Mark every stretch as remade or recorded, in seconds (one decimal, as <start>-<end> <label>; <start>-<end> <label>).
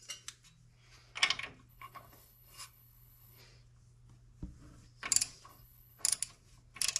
0.0-1.7 recorded; 1.7-3.4 remade; 3.4-5.5 recorded; 5.5-6.0 remade; 6.0-7.0 recorded